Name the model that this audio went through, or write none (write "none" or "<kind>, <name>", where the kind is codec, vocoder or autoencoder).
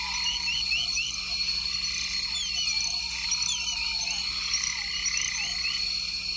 none